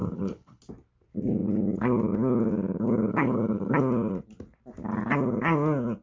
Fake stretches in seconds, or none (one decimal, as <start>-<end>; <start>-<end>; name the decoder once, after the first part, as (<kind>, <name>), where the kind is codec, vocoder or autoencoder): 0.0-0.6 (codec, HILCodec); 3.1-3.8